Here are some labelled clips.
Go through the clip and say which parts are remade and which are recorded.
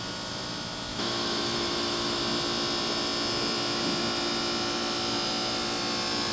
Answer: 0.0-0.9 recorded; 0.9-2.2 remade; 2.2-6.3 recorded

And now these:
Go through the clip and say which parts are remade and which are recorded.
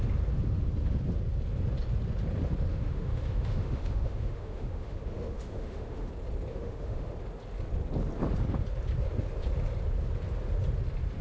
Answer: 0.0-2.7 recorded; 2.7-6.1 remade; 6.1-6.5 recorded; 6.5-7.1 remade; 7.1-11.2 recorded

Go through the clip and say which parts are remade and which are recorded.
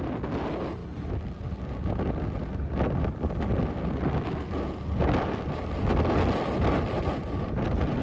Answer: 0.0-8.0 recorded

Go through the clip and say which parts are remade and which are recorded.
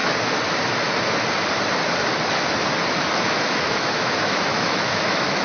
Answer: 0.0-3.2 recorded; 3.2-5.4 remade